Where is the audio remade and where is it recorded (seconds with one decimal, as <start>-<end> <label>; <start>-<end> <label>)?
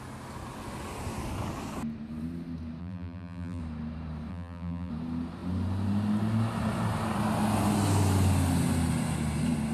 0.0-2.8 recorded; 2.8-3.6 remade; 3.6-4.3 recorded; 4.3-4.9 remade; 4.9-9.7 recorded